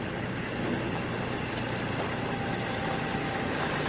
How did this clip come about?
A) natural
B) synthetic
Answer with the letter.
A